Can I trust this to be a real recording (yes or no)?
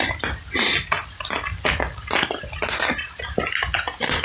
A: yes